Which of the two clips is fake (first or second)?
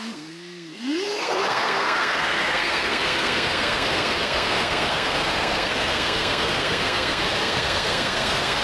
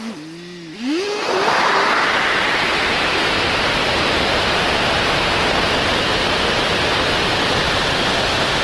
first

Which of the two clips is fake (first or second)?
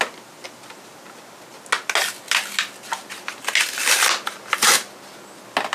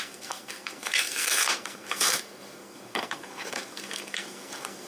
second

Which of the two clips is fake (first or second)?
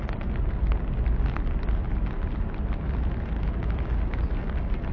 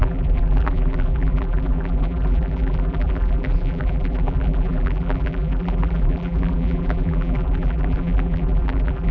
second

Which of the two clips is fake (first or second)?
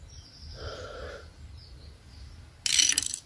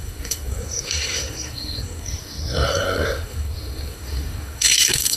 second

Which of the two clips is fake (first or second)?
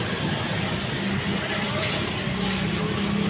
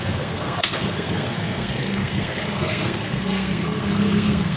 second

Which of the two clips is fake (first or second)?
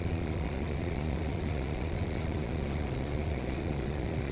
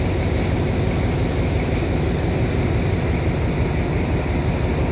first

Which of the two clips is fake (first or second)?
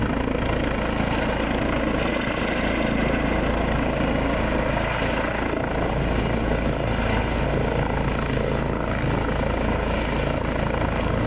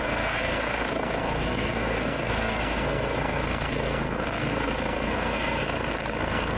second